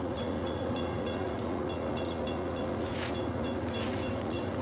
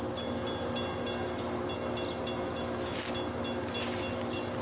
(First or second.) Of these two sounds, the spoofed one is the first